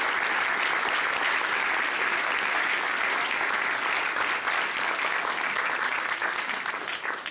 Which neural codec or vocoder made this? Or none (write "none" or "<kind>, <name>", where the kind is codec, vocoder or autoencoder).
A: none